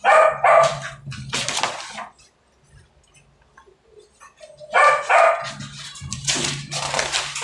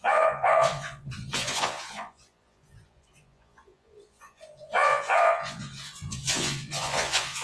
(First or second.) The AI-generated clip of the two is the second